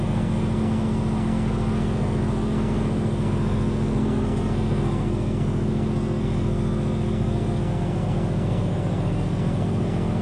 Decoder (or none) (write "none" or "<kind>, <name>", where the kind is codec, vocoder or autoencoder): codec, SNAC